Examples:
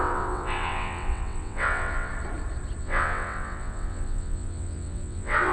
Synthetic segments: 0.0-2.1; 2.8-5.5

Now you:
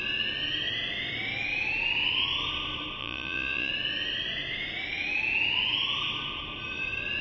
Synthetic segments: 3.0-3.7

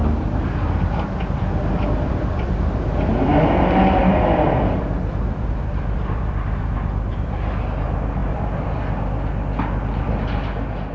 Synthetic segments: 0.0-3.3; 4.0-7.1; 8.2-8.7